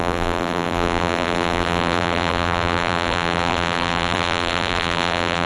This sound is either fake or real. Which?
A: fake